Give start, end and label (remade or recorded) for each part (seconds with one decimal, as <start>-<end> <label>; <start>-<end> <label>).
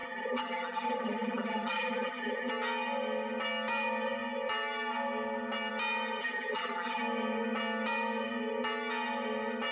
0.0-2.5 remade; 2.5-6.2 recorded; 6.2-7.0 remade; 7.0-9.7 recorded